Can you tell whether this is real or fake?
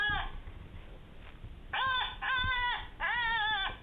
real